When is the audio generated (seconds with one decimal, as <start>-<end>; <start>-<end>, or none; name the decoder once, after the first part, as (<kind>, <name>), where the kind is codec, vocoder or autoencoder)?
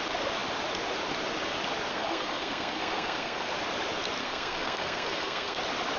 1.9-3.5 (codec, SNAC); 4.2-5.6